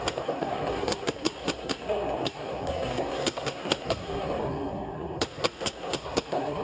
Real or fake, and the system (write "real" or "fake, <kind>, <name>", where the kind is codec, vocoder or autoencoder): fake, codec, SNAC